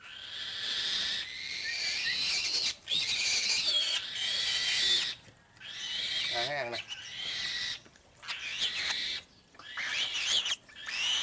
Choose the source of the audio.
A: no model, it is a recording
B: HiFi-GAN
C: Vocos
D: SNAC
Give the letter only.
A